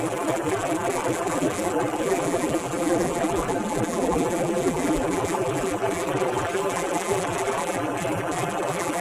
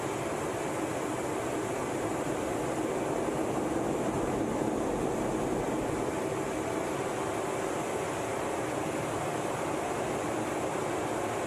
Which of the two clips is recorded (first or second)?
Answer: second